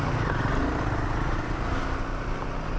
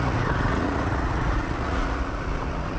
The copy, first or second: second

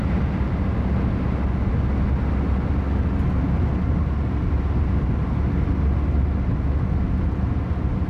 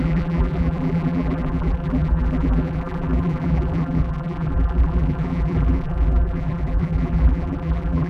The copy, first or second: second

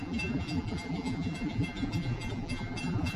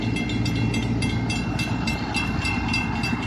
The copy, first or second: first